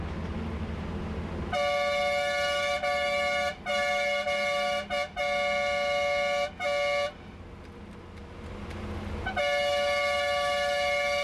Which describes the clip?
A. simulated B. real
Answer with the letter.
B